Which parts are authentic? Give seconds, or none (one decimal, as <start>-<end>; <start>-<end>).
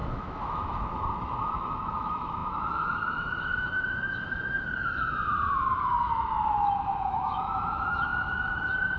none